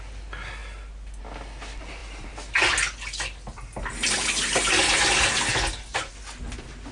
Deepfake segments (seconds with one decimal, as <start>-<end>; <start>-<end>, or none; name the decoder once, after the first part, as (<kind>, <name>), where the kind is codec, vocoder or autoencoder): none